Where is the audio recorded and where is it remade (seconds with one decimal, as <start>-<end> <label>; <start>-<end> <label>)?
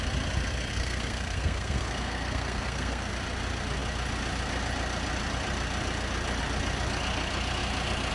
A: 0.0-0.7 recorded; 0.7-3.1 remade; 3.1-8.1 recorded